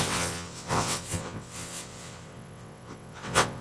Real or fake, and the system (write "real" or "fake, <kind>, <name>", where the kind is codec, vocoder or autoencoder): fake, vocoder, WaveNeXt